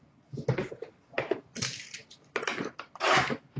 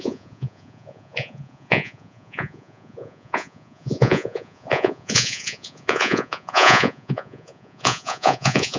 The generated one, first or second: second